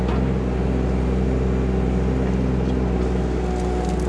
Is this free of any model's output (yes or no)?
yes